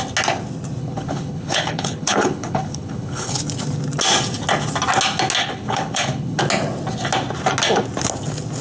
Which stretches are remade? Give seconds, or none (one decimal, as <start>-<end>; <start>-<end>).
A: 0.8-3.4; 5.4-6.4